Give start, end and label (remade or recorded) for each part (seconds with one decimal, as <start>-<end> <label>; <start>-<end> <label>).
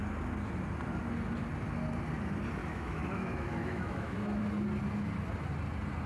0.0-2.6 recorded; 2.6-4.4 remade; 4.4-6.1 recorded